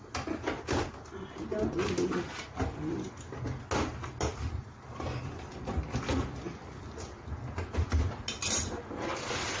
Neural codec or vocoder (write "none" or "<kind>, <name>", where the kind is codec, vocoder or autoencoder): none